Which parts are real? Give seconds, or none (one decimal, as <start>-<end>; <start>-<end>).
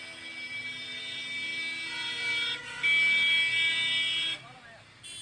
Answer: 0.0-5.2